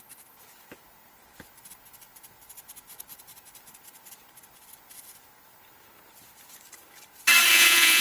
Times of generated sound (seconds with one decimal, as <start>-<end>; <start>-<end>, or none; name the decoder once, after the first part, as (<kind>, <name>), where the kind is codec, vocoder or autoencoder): 7.5-8.0 (vocoder, Vocos)